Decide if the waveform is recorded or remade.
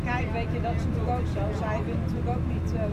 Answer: recorded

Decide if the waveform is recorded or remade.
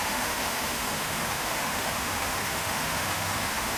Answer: remade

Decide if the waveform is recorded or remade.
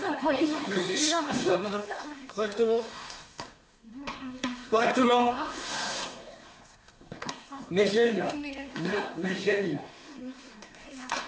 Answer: remade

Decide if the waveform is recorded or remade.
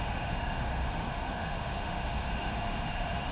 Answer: remade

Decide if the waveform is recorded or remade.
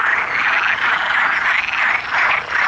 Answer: recorded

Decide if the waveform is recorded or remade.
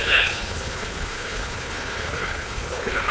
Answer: remade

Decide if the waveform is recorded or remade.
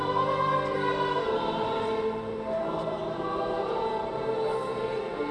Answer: remade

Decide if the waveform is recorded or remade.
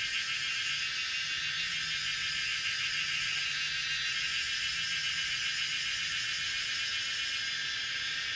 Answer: recorded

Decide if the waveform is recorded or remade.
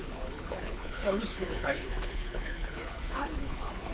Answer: remade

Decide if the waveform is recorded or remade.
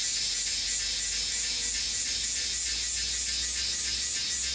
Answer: recorded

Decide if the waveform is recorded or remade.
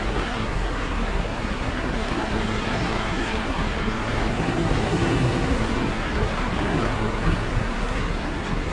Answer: remade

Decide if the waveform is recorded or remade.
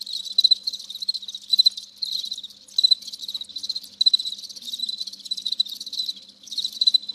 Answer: recorded